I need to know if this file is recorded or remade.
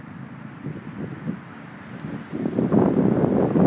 recorded